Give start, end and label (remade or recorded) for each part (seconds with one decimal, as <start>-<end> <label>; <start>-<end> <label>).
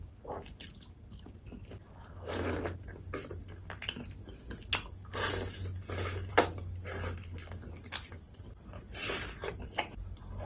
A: 0.0-10.5 recorded